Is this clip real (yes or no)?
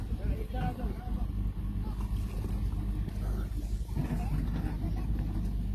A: yes